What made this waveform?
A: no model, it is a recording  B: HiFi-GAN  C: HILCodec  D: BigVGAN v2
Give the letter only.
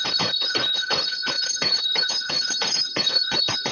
C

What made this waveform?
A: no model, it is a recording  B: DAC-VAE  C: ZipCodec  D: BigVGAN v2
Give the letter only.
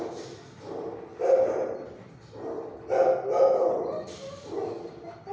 A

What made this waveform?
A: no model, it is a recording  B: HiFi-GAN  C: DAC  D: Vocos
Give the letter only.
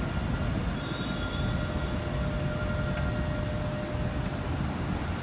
A